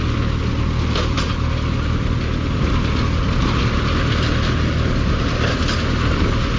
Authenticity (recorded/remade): recorded